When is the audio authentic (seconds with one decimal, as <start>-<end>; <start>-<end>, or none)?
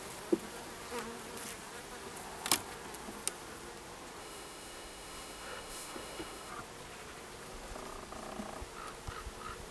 0.0-4.2; 6.5-9.7